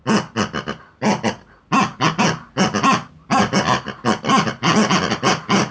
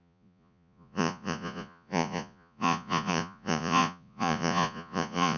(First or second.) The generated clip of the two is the second